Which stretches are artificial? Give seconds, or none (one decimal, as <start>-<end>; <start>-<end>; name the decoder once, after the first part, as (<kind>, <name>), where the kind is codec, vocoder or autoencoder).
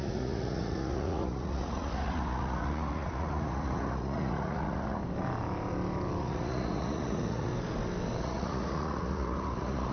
0.0-5.0 (vocoder, Vocos); 6.2-7.5; 8.2-9.9